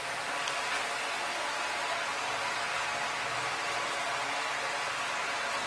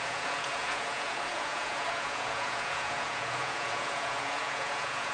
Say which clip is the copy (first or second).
second